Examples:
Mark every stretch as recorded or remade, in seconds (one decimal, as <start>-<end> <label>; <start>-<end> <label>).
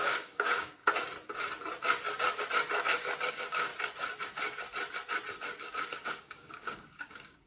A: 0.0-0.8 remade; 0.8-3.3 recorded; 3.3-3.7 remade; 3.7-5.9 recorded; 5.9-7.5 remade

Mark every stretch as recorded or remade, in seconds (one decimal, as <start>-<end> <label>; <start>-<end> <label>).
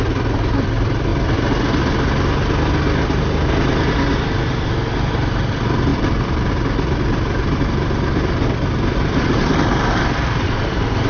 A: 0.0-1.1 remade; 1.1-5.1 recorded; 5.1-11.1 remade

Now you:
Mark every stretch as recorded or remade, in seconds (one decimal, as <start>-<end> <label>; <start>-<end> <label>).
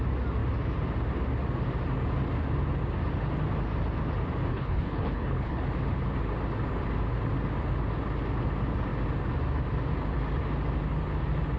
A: 0.0-4.5 recorded; 4.5-5.6 remade; 5.6-11.6 recorded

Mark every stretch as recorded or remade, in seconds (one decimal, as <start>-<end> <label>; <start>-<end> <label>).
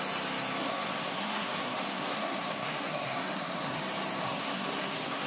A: 0.0-0.6 recorded; 0.6-3.8 remade; 3.8-4.2 recorded; 4.2-5.3 remade